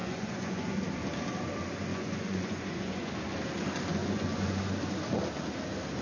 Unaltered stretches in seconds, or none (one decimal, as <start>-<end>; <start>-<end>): 0.7-1.9; 3.1-4.0; 4.6-6.0